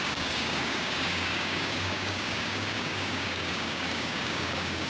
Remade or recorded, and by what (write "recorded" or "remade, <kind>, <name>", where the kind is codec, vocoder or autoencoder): remade, codec, DAC